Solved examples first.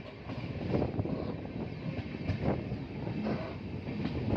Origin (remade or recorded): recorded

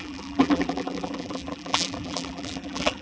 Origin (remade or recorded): remade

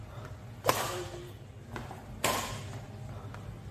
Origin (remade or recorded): recorded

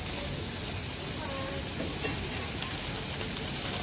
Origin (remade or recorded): recorded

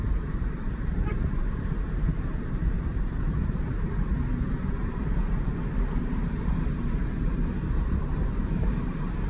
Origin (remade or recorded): remade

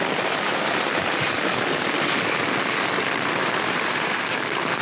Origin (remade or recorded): remade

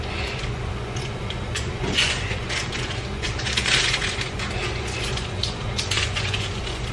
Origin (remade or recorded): remade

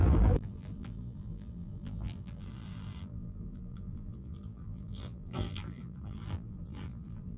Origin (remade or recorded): remade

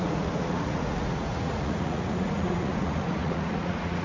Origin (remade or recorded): remade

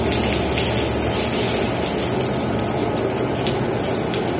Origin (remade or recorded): recorded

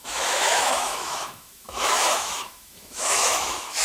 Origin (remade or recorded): remade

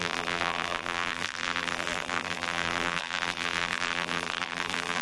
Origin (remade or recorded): remade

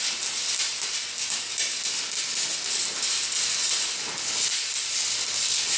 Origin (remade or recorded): recorded